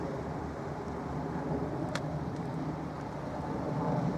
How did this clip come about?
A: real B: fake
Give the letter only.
A